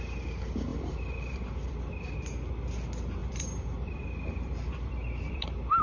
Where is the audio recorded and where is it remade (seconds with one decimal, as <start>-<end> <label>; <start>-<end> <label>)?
0.0-0.7 recorded; 0.7-1.9 remade; 1.9-3.2 recorded; 3.2-5.8 remade